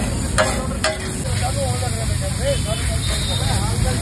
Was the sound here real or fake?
real